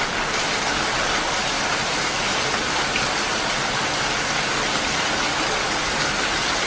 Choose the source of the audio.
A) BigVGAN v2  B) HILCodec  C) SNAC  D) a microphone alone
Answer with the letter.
D